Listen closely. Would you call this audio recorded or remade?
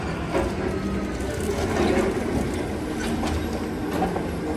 recorded